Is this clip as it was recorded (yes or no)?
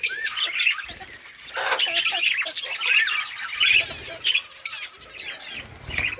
yes